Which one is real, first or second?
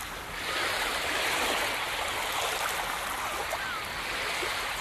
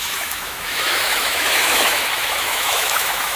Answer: first